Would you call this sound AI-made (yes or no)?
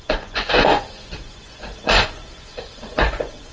yes